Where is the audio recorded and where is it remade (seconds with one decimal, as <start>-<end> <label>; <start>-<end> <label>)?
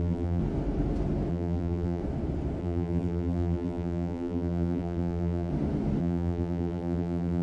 0.0-0.4 remade; 0.4-1.3 recorded; 1.3-2.0 remade; 2.0-2.6 recorded; 2.6-5.5 remade; 5.5-6.0 recorded; 6.0-7.4 remade